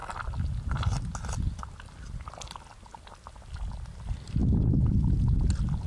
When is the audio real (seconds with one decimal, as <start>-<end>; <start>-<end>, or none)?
0.0-5.9